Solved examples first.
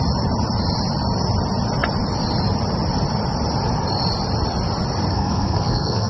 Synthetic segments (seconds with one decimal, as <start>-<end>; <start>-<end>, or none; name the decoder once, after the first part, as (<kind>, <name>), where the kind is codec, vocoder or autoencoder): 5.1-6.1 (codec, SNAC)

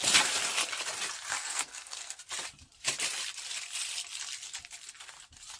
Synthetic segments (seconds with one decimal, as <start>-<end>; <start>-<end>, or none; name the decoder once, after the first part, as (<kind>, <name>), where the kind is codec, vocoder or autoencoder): 1.3-2.2 (codec, SNAC)

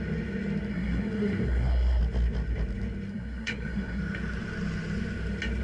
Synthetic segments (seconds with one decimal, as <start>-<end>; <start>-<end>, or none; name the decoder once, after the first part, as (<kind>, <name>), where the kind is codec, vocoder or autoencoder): 0.7-2.0 (codec, SNAC); 3.1-4.0

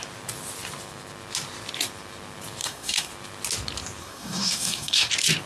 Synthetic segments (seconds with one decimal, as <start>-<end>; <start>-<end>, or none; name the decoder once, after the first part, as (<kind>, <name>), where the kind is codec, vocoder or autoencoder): 2.6-3.1 (codec, SNAC); 4.0-5.1